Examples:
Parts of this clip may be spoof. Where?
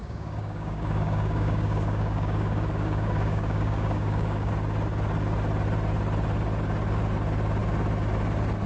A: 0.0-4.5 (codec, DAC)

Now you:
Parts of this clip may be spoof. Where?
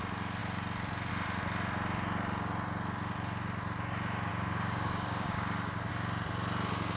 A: 4.3-5.9 (codec, DAC)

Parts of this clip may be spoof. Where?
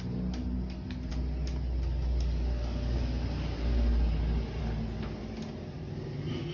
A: none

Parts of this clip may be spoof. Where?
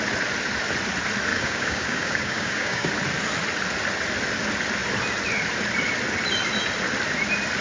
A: 1.3-2.9 (codec, DAC)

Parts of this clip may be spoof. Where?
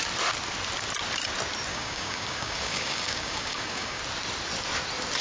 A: 1.7-4.0 (codec, DAC)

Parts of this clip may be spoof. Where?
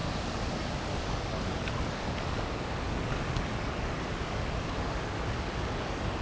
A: 0.0-6.2 (codec, DAC)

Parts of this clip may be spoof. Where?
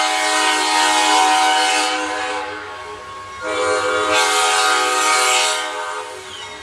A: 2.3-3.0 (codec, DAC)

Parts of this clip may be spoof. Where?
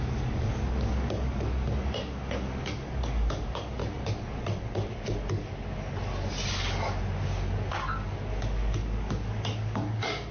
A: 0.0-3.8 (codec, DAC); 8.3-10.3